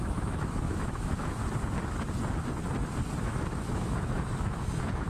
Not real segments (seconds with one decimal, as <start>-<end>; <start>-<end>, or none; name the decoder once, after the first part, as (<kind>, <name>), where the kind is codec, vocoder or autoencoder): 0.0-1.4 (autoencoder, DAC-VAE); 3.2-5.1